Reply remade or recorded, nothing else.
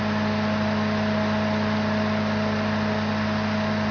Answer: recorded